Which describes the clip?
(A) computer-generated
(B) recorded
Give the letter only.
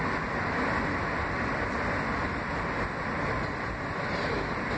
B